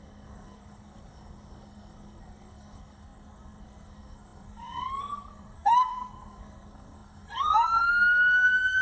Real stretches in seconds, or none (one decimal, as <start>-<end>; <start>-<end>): none